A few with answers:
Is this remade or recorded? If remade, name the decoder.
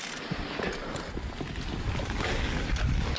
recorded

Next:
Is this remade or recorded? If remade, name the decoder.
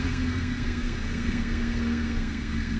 remade, codec, SNAC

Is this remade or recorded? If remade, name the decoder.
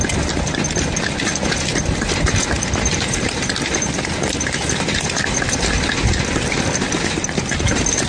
recorded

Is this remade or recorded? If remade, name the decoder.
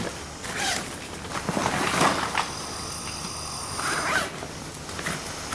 recorded